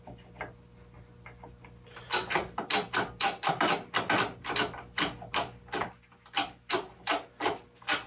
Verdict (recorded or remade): recorded